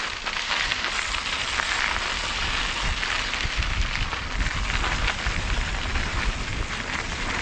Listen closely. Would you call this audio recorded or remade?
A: recorded